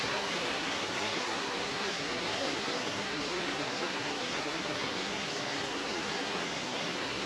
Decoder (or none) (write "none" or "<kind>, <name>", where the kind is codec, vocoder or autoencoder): codec, SNAC